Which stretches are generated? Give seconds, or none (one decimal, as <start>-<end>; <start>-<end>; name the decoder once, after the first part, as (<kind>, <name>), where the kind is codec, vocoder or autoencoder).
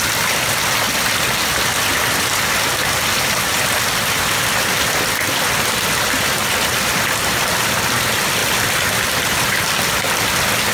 8.4-10.1 (vocoder, BigVGAN v2)